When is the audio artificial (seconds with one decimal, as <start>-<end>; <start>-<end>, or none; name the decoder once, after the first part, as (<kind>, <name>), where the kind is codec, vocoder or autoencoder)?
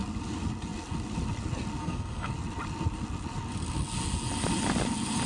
1.8-2.3 (codec, SNAC)